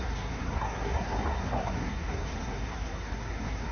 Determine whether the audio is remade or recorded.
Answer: remade